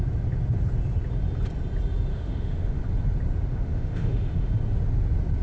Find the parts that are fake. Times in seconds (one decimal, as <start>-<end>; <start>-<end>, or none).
2.1-2.8; 3.5-4.5